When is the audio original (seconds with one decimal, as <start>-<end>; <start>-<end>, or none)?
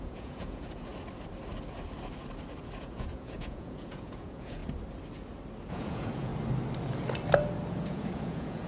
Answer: 0.9-2.8; 4.6-5.7; 6.3-7.7